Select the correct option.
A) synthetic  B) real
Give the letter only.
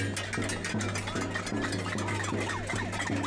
B